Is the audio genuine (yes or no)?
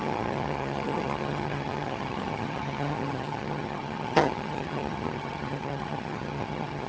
no